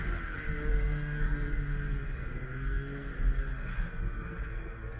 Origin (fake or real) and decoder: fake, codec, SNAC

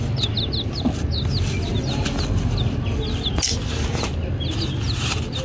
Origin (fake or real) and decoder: real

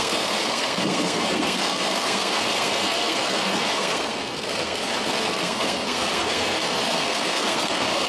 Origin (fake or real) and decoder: fake, codec, SNAC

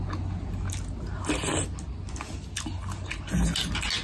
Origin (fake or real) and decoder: real